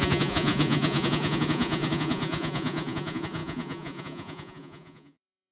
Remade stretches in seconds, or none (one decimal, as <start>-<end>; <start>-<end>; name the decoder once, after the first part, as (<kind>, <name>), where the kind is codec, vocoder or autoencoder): 0.0-5.5 (vocoder, Vocos)